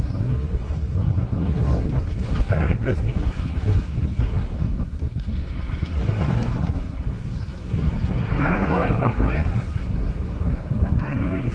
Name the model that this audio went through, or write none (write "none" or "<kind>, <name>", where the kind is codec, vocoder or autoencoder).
codec, SNAC